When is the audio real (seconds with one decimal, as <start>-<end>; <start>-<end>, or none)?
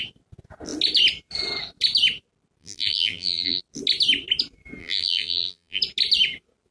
0.0-2.6; 3.6-4.8; 5.8-6.7